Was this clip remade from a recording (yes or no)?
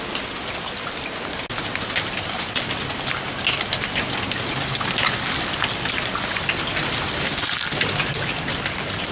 no